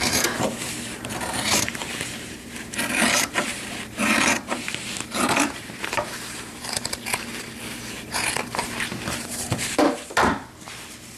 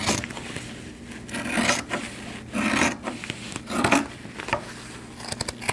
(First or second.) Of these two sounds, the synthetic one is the first